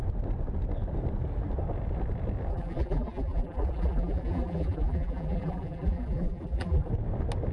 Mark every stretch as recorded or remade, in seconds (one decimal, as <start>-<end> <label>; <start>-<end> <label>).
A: 0.0-2.5 recorded; 2.5-6.9 remade; 6.9-7.5 recorded